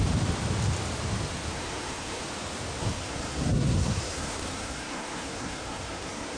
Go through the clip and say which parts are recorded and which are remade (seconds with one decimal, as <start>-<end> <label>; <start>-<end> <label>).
0.0-1.5 recorded; 1.5-2.2 remade; 2.2-2.8 recorded; 2.8-6.4 remade